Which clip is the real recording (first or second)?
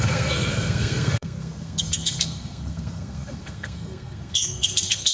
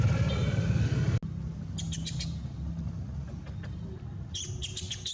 second